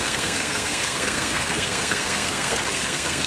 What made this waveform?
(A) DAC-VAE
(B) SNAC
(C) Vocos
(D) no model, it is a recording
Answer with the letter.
B